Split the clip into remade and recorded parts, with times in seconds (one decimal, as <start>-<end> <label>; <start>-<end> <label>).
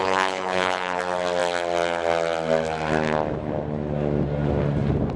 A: 0.0-1.0 remade; 1.0-5.2 recorded